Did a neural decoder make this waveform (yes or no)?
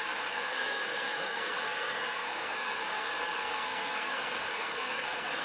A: yes